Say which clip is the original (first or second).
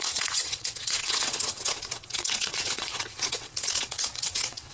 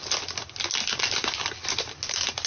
second